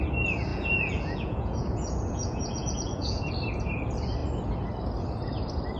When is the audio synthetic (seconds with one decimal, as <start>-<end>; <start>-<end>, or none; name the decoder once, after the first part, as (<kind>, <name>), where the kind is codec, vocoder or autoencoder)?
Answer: 0.5-3.3 (vocoder, Vocos)